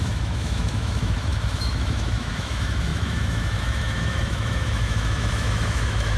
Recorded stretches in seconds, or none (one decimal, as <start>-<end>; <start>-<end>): none